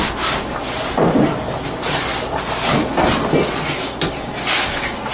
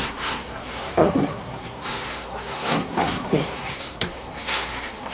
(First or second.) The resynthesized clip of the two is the second